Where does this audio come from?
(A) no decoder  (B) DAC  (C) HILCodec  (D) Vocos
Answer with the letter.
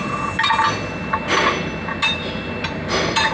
A